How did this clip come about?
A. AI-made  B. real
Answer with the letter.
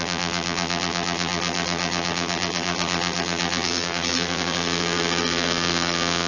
A